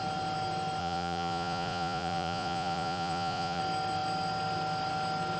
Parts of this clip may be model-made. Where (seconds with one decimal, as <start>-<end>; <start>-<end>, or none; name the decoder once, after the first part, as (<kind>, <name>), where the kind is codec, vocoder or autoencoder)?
0.8-3.6 (vocoder, Vocos)